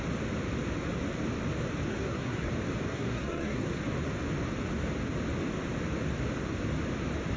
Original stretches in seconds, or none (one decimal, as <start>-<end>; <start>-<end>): 0.0-1.9; 2.5-2.9; 3.8-7.4